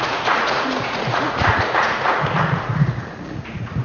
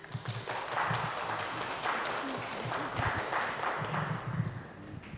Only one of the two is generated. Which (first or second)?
first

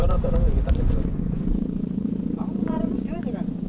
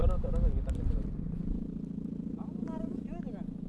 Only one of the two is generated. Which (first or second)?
first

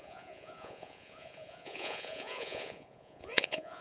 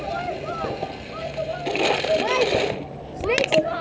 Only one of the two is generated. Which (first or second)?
first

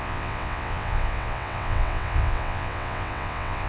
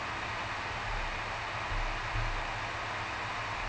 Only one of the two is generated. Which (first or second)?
first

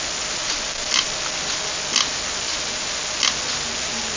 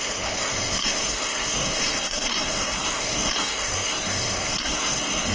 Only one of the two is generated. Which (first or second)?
second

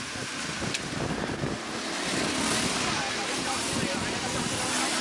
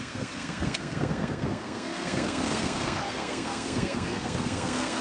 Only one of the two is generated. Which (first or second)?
second